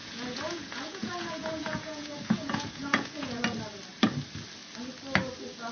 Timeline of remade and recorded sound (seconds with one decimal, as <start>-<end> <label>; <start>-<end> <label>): 0.0-3.4 remade; 3.4-5.7 recorded